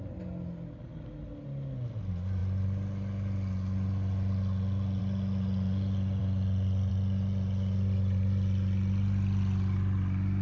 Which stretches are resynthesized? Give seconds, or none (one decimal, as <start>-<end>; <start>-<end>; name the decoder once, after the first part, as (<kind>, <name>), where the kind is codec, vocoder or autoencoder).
none